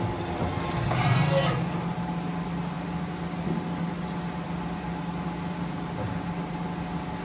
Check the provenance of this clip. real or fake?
real